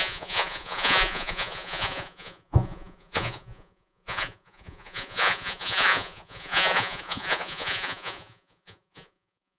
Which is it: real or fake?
fake